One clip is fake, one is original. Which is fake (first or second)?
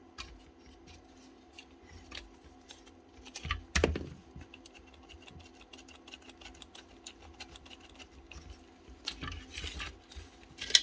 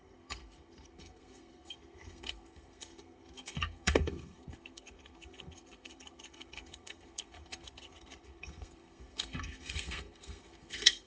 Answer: second